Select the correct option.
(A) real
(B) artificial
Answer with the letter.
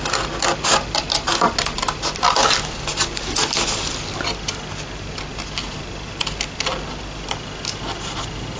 A